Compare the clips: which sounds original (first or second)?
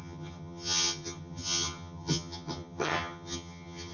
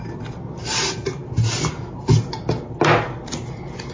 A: second